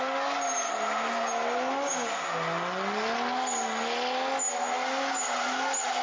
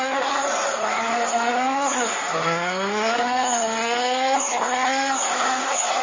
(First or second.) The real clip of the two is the first